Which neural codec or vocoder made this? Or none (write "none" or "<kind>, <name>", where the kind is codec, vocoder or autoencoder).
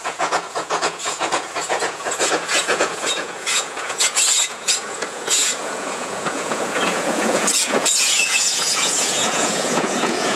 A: vocoder, Vocos